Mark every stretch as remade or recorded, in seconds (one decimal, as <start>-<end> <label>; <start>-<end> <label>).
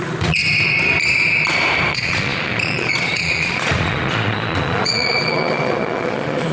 0.0-0.4 remade; 0.4-1.9 recorded; 1.9-6.5 remade